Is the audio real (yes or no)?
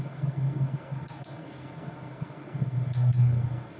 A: no